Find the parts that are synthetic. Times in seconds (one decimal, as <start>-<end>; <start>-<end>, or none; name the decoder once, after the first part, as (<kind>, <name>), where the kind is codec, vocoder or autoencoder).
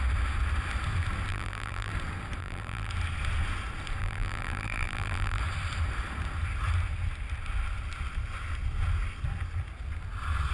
1.3-1.9 (vocoder, BigVGAN v2); 2.4-2.9; 4.0-5.4